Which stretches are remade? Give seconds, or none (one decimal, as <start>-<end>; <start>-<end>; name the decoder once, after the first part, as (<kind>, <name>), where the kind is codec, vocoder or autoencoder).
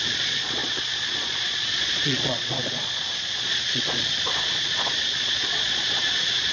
0.0-6.5 (vocoder, Vocos)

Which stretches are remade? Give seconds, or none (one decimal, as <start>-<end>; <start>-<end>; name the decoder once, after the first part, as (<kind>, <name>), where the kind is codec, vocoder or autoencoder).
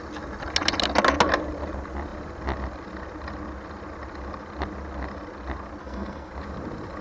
5.8-6.3 (codec, SNAC)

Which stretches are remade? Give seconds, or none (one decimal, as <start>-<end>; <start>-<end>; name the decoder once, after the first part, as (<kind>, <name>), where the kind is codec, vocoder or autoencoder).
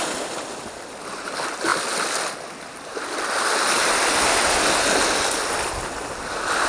none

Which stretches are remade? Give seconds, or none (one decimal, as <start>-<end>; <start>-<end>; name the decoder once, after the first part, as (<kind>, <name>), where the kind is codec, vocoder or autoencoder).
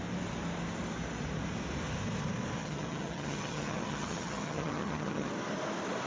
2.6-5.3 (vocoder, HiFi-GAN)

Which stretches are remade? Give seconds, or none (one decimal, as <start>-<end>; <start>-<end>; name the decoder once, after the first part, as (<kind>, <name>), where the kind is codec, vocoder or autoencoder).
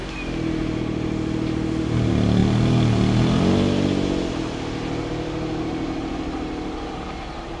none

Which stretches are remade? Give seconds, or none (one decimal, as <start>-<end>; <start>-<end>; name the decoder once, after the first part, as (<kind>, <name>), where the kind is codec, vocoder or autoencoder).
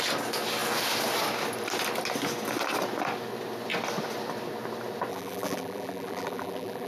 5.1-6.9 (vocoder, BigVGAN v2)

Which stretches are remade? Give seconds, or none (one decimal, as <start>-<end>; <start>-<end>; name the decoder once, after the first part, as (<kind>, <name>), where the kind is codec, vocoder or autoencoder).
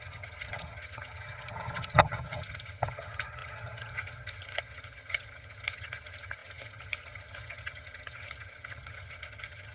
0.0-9.7 (vocoder, HiFi-GAN)